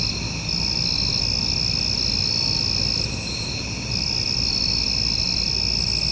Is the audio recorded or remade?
recorded